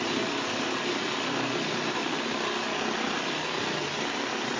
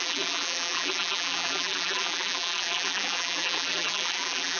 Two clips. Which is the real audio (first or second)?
first